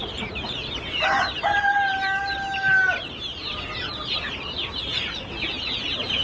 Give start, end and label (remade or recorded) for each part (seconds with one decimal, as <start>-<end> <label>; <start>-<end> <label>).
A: 0.0-6.2 recorded